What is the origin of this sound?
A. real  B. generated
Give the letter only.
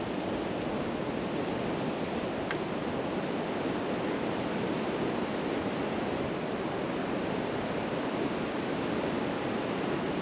A